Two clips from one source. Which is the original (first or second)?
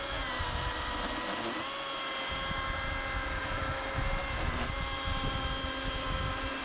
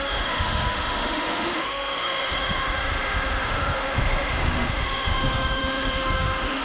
first